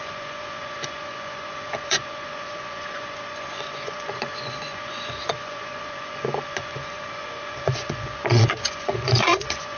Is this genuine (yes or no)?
no